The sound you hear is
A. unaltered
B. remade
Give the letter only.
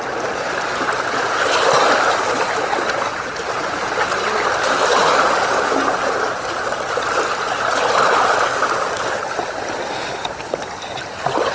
A